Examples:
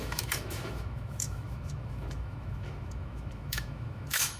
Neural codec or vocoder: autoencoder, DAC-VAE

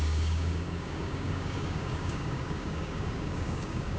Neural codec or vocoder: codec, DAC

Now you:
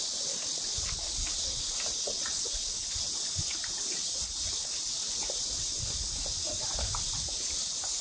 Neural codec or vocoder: none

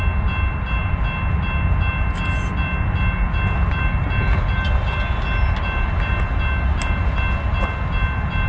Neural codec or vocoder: none